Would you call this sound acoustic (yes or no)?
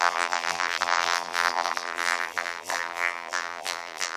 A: no